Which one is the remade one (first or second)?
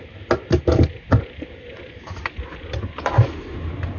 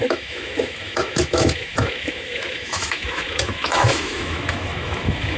second